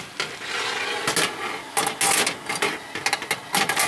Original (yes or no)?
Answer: yes